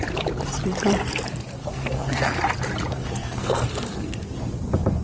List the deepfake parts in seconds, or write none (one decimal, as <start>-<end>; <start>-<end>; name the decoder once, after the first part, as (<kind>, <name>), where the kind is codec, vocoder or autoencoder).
1.6-2.4 (codec, SNAC); 2.9-4.3